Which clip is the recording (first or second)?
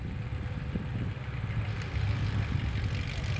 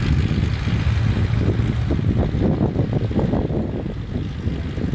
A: second